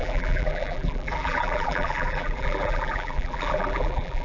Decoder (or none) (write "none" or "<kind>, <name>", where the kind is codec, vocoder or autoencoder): vocoder, BigVGAN v2